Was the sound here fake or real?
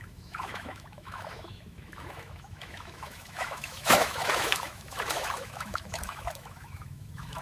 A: fake